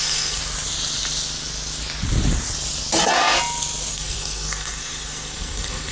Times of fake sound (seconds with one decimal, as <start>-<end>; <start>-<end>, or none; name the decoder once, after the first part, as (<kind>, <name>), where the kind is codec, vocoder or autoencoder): 0.0-0.4 (codec, SNAC); 3.9-5.9